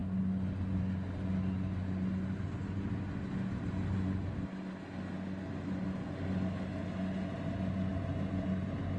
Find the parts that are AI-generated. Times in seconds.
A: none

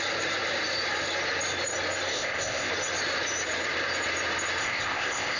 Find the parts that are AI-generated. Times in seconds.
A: 2.1-2.7 (codec, ZipCodec); 4.6-5.4

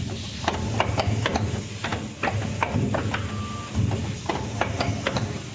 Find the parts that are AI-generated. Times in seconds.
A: none

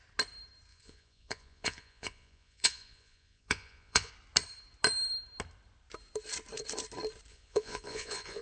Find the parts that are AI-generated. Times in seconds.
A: 0.7-4.1 (vocoder, Vocos); 7.3-8.4

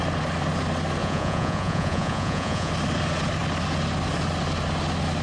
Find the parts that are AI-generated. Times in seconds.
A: 1.0-2.7 (vocoder, Vocos)

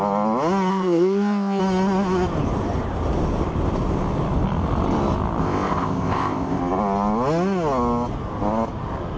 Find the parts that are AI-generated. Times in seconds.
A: 0.7-1.6 (codec, ZipCodec); 5.4-6.6

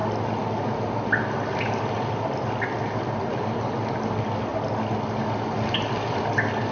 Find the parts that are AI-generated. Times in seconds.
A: none

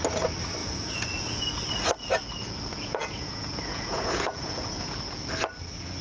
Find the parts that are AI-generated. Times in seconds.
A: 0.6-1.5 (vocoder, Vocos); 2.7-4.9